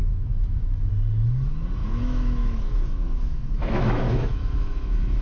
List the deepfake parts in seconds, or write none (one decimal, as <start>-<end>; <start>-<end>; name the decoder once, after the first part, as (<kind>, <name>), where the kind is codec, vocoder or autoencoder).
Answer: 0.0-0.9 (autoencoder, DAC-VAE); 1.8-5.2